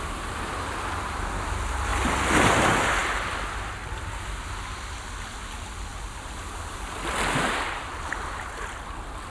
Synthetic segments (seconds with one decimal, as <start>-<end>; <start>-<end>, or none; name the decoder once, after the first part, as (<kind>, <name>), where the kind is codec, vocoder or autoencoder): none